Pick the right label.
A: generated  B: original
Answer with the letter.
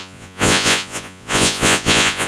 A